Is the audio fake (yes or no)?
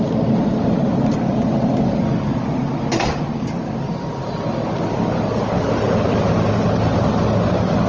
no